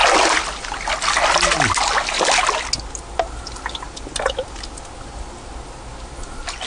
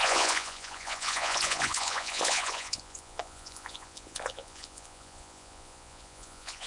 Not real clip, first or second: second